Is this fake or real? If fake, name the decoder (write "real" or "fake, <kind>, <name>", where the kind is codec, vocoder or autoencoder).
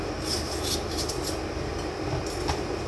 real